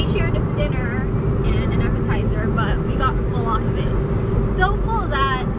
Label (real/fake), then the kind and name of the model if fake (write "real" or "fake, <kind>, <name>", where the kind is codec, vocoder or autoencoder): real